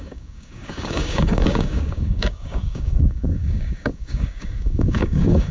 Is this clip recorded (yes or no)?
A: no